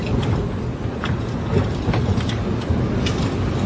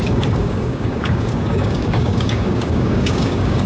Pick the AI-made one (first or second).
second